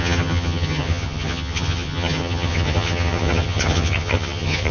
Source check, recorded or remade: remade